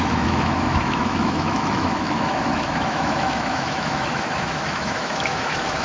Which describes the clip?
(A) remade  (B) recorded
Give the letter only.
A